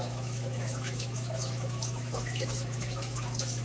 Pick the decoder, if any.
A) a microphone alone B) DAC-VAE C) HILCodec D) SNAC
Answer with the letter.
B